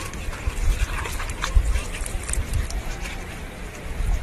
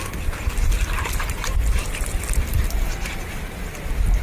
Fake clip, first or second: first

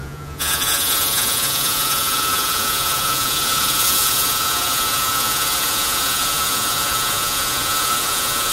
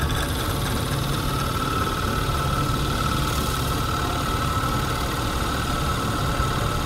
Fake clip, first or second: first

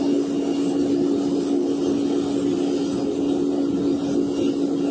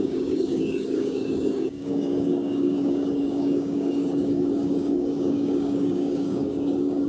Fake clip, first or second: second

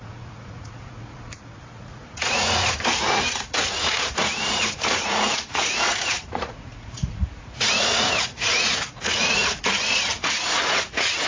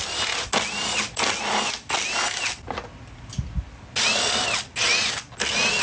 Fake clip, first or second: first